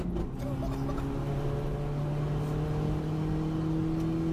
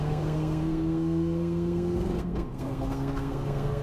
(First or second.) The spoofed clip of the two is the second